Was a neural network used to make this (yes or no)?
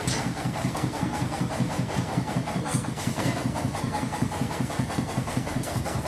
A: yes